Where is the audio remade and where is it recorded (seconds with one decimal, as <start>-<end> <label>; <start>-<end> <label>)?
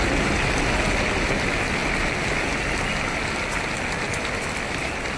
0.0-5.2 recorded